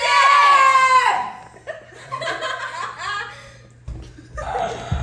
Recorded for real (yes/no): yes